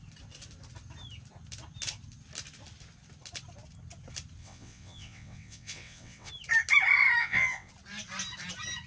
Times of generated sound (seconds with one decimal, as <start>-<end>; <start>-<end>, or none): 4.4-6.3; 7.2-7.7